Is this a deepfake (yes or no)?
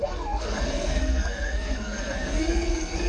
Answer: yes